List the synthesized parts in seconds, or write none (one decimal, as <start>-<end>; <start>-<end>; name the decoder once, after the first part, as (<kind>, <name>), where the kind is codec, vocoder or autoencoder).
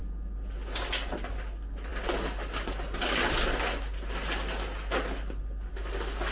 none